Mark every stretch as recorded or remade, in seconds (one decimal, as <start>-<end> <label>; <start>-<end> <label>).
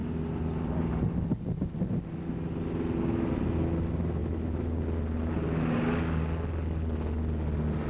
0.0-7.9 recorded